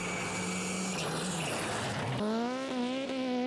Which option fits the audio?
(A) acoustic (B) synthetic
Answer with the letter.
A